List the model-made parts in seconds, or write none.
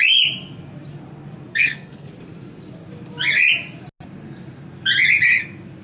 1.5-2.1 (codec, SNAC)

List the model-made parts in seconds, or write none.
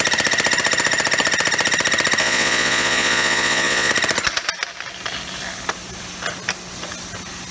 2.2-3.9 (vocoder, Vocos)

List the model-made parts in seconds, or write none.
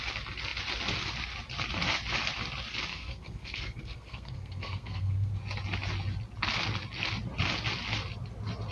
2.9-5.3 (codec, SNAC)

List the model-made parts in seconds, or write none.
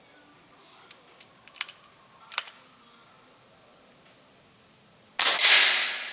none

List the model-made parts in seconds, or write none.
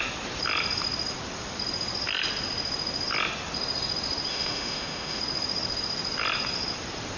4.3-5.2 (autoencoder, DAC-VAE)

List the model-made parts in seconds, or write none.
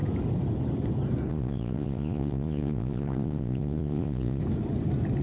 1.3-4.4 (vocoder, Vocos)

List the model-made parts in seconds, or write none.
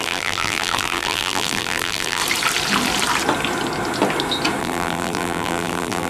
0.0-2.2 (vocoder, BigVGAN v2); 4.6-6.1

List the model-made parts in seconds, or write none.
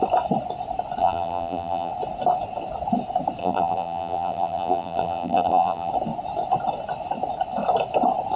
1.0-1.9 (vocoder, BigVGAN v2); 3.4-5.9